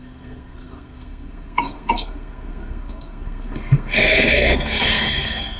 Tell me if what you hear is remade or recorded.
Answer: remade